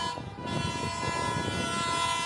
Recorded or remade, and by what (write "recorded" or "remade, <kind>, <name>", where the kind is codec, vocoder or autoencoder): recorded